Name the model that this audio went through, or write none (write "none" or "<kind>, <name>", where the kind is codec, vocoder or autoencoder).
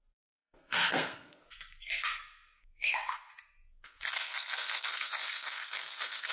codec, SNAC